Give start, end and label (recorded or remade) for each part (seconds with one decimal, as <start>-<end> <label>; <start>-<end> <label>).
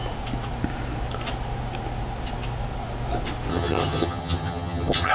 0.0-3.5 recorded; 3.5-5.1 remade